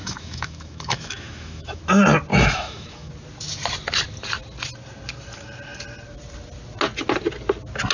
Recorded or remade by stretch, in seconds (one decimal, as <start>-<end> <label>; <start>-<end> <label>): 0.0-1.8 remade; 1.8-2.3 recorded; 2.3-3.1 remade; 3.1-7.9 recorded